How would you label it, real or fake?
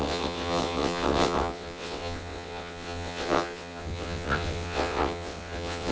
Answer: fake